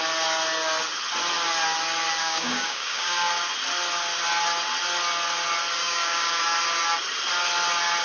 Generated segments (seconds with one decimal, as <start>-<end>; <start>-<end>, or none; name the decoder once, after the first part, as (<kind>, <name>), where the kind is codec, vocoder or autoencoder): 2.2-3.3 (codec, DAC); 5.8-6.4

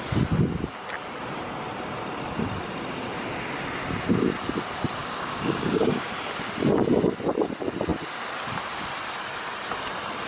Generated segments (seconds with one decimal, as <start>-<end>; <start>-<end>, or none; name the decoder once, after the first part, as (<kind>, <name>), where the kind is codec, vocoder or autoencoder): 5.0-6.1 (codec, DAC)